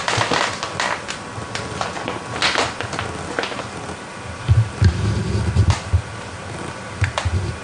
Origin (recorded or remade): recorded